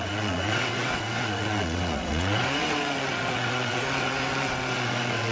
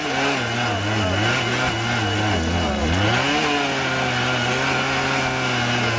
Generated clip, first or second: first